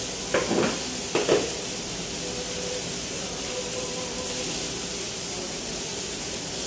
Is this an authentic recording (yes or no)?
yes